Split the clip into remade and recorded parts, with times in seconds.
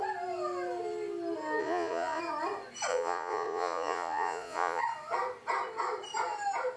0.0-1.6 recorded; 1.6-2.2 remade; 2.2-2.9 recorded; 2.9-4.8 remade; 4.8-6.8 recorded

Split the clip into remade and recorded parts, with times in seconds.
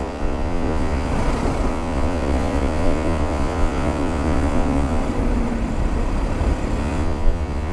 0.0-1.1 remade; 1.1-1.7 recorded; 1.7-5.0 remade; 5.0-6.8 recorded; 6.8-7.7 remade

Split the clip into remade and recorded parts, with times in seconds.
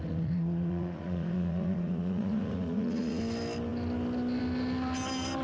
0.0-3.2 remade; 3.2-5.4 recorded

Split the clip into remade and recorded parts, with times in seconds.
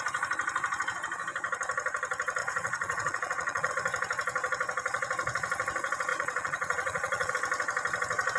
0.0-2.4 recorded; 2.4-3.7 remade; 3.7-6.1 recorded; 6.1-7.3 remade; 7.3-8.4 recorded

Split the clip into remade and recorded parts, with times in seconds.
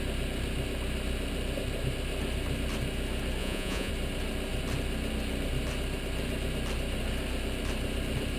0.0-3.4 recorded; 3.4-3.9 remade; 3.9-8.4 recorded